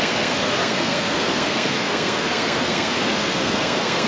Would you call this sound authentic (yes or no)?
no